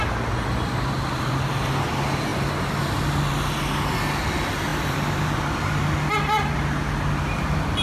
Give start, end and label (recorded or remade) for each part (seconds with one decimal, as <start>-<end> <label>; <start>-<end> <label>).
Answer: 0.0-0.7 recorded; 0.7-1.5 remade; 1.5-4.7 recorded; 4.7-5.6 remade; 5.6-7.8 recorded